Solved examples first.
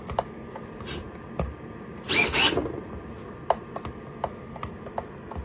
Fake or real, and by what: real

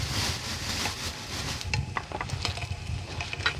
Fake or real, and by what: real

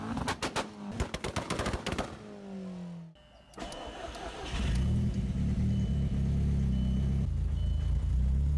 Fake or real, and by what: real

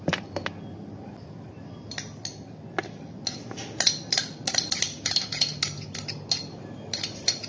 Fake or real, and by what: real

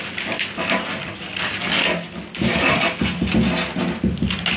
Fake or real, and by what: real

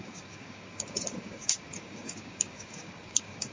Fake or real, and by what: fake, codec, DAC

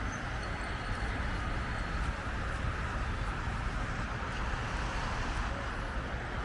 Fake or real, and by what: real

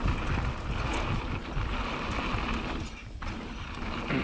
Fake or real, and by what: real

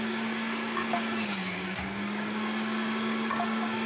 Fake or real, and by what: fake, codec, DAC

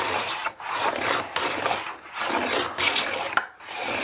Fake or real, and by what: real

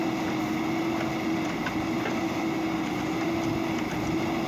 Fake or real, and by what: real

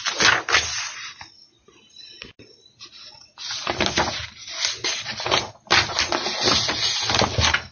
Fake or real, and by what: real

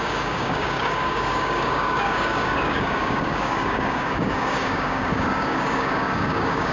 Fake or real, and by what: fake, codec, DAC